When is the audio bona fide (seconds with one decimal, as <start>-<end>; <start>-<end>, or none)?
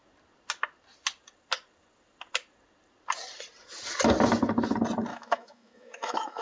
0.0-5.1